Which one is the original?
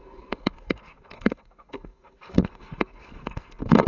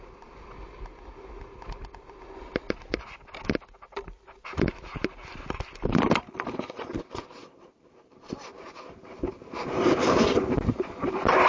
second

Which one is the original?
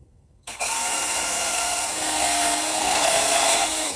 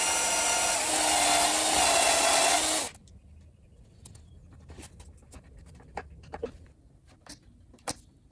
second